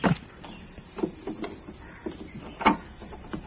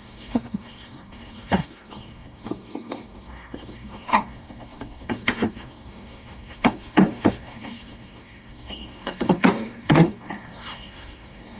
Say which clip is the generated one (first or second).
second